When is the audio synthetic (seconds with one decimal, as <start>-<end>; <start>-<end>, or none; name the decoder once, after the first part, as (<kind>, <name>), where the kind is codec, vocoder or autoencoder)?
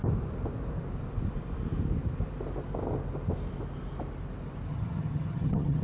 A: 4.7-5.8 (vocoder, HiFi-GAN)